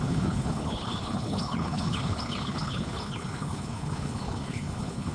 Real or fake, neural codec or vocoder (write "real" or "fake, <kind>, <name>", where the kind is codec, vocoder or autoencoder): fake, codec, HILCodec